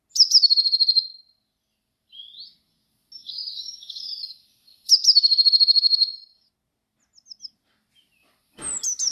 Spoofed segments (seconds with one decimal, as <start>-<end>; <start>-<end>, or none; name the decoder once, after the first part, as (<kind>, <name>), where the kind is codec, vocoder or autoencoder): none